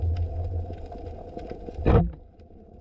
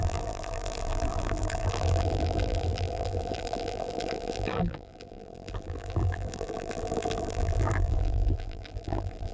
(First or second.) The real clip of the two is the first